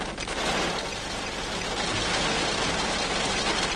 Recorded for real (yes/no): yes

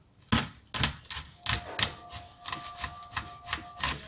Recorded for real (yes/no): yes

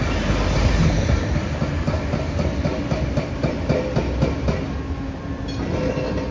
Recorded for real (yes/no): yes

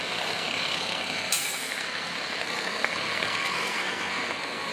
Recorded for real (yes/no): no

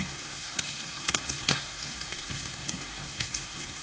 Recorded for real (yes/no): no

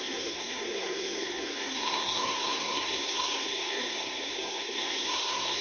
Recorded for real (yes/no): no